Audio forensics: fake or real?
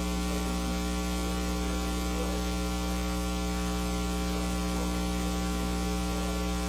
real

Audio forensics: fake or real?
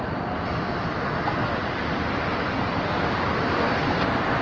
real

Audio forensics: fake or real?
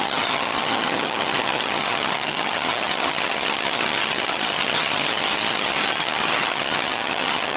fake